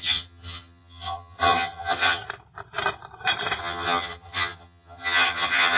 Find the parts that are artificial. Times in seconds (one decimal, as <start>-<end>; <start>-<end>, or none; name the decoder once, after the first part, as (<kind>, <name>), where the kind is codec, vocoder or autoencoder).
0.0-2.2 (vocoder, HiFi-GAN); 3.6-5.8